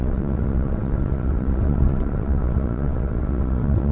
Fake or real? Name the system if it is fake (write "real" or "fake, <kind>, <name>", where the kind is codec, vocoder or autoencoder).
fake, vocoder, WaveNeXt